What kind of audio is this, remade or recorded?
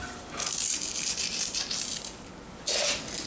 recorded